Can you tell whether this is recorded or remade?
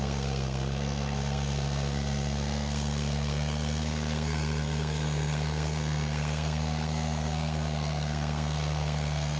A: remade